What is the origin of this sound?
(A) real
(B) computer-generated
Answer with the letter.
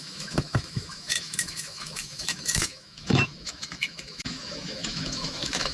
B